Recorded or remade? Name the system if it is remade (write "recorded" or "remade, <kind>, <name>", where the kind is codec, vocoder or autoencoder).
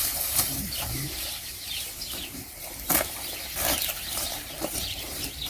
remade, vocoder, BigVGAN v2